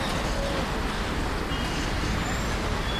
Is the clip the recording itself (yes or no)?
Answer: yes